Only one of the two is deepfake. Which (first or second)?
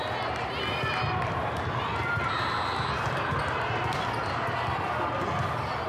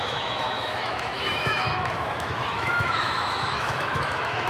second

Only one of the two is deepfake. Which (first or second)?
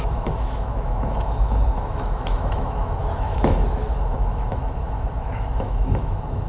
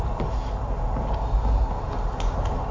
first